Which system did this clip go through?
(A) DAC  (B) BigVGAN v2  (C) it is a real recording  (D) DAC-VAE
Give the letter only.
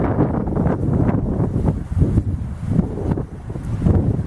B